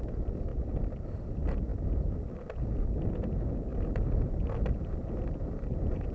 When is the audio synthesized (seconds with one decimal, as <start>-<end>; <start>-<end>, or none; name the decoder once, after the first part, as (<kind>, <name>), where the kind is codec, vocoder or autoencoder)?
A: 0.5-1.1 (vocoder, BigVGAN v2)